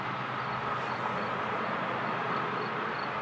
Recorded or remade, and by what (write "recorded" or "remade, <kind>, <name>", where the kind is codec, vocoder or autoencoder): recorded